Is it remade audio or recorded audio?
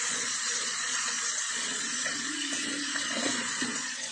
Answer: remade